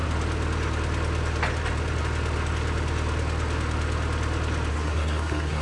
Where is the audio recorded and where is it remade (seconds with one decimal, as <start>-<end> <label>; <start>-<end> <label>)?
0.0-4.7 recorded; 4.7-5.6 remade